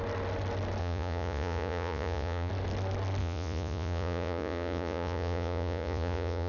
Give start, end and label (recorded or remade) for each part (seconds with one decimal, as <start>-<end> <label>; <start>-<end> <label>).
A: 0.0-0.8 recorded; 0.8-2.5 remade; 2.5-3.2 recorded; 3.2-6.5 remade